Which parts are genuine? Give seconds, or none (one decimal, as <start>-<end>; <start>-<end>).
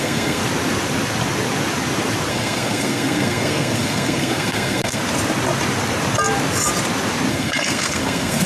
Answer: 0.4-2.3; 5.0-7.3